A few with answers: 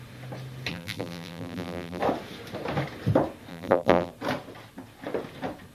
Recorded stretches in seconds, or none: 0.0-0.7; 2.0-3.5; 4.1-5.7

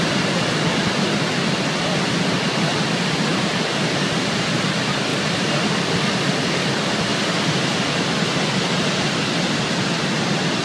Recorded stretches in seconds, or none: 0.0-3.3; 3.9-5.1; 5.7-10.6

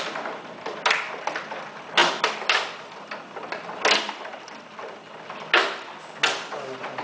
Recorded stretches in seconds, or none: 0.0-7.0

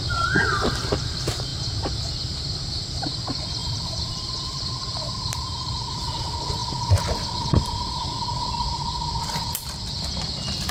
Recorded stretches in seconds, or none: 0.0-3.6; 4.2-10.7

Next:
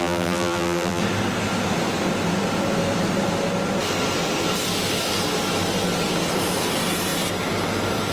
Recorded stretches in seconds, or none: 1.0-8.1

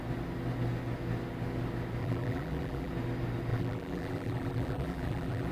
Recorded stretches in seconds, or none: 0.0-2.0; 2.9-3.5